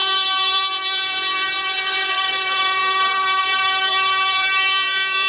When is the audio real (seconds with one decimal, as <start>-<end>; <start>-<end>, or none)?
none